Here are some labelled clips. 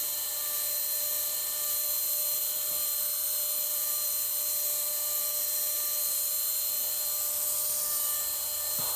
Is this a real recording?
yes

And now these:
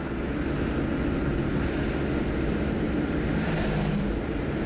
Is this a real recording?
yes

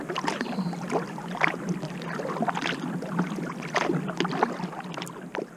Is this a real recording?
yes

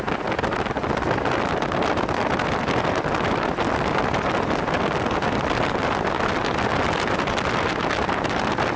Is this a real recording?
yes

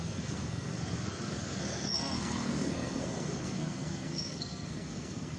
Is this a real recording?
no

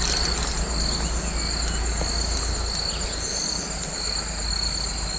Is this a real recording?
yes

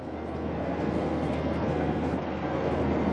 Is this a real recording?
no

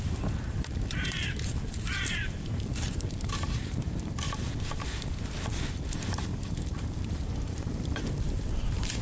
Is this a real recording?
no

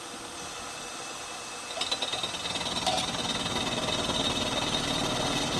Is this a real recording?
yes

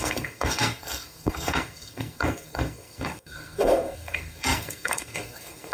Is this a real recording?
no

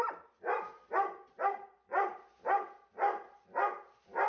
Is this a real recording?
yes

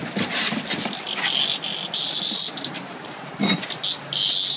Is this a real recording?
yes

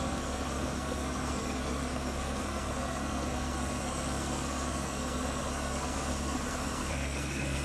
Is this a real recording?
no